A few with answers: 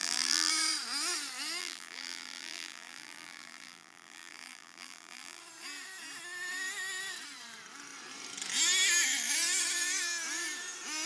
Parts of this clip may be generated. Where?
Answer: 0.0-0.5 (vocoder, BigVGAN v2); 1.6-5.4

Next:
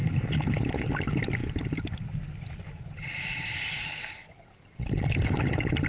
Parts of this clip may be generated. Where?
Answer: 0.6-5.9 (vocoder, BigVGAN v2)

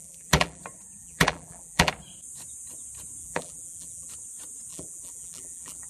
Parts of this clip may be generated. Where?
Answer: 0.0-0.6 (vocoder, BigVGAN v2); 1.0-1.9; 3.2-4.1; 4.7-5.9